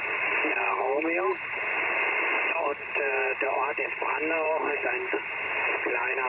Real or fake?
real